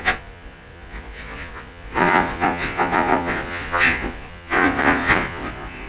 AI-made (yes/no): yes